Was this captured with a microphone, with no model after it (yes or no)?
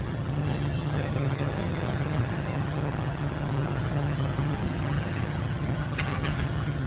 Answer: no